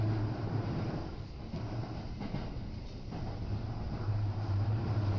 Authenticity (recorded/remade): remade